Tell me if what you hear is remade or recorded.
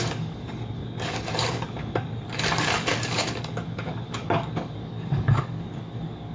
remade